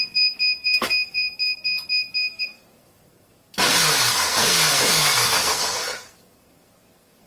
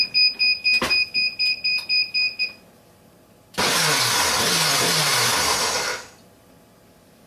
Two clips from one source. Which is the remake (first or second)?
first